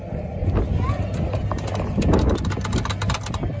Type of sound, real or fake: real